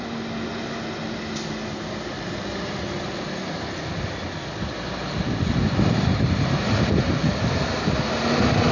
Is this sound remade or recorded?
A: recorded